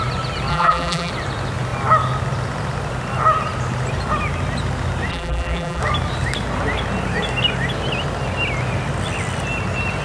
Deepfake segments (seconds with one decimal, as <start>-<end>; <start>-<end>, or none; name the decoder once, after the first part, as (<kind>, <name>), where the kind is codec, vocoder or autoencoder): 0.5-1.1 (vocoder, BigVGAN v2); 5.1-5.8